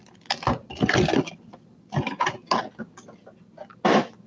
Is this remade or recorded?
recorded